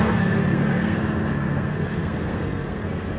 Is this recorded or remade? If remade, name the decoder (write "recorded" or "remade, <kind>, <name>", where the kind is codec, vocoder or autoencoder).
remade, codec, SNAC